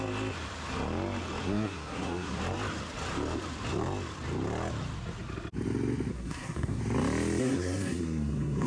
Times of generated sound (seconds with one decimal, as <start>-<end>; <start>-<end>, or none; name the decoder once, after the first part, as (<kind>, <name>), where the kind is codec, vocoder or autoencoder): 1.4-2.4 (codec, SNAC); 6.1-6.8; 7.4-8.7

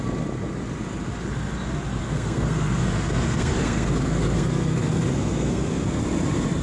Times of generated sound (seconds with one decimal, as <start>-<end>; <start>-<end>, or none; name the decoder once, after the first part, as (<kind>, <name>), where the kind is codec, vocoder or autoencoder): 2.0-6.0 (codec, SNAC)

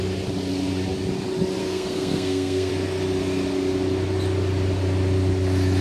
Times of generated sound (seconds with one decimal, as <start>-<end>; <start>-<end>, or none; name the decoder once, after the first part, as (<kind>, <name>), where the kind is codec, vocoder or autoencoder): 1.6-2.7 (codec, SNAC)

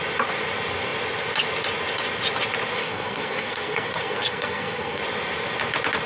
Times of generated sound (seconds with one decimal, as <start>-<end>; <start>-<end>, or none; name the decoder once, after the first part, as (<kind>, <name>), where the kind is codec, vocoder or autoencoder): 2.8-5.0 (codec, SNAC)

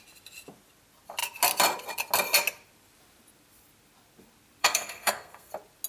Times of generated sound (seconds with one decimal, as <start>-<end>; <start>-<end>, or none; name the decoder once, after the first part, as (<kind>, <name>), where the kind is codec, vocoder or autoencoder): 4.6-5.5 (codec, SNAC)

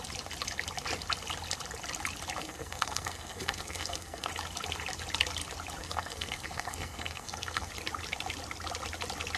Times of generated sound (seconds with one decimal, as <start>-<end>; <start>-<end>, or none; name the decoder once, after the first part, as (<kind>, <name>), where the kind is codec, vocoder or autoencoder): 2.4-4.3 (codec, SNAC); 5.8-7.7

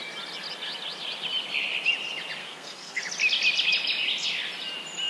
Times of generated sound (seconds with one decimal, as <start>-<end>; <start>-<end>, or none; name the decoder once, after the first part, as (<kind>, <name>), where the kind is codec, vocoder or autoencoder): 2.4-3.0 (codec, SNAC)

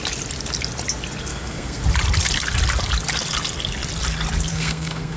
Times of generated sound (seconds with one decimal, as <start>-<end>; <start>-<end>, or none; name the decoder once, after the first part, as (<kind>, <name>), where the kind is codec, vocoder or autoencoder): 1.3-1.8 (codec, SNAC); 4.5-5.2